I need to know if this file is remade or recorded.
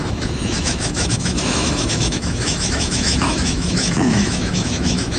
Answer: remade